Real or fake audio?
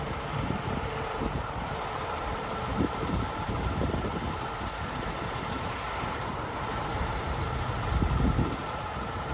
fake